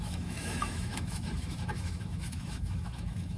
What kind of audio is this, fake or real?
fake